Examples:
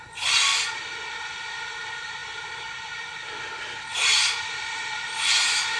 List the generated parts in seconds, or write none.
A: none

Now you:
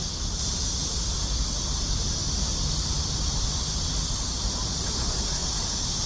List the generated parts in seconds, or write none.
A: 2.2-4.9 (vocoder, BigVGAN v2); 5.4-6.1

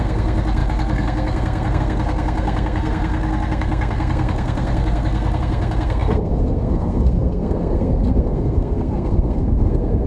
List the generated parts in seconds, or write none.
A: 0.0-10.1 (codec, SNAC)

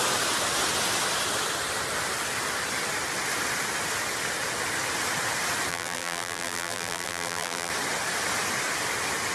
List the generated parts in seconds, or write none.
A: 5.7-7.7 (vocoder, BigVGAN v2)

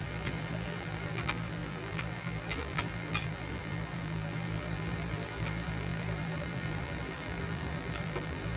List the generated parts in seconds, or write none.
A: 0.0-8.6 (vocoder, BigVGAN v2)

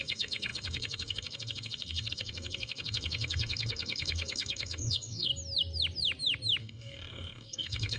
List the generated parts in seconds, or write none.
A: 0.0-5.3 (codec, DAC); 6.6-8.0

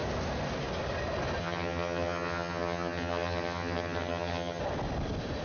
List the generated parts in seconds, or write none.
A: 1.4-4.6 (vocoder, HiFi-GAN)